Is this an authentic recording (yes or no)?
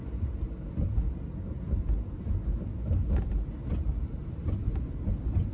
yes